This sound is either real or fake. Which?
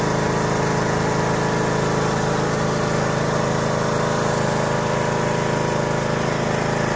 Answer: real